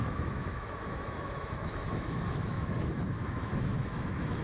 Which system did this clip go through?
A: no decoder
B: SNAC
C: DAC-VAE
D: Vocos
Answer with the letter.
C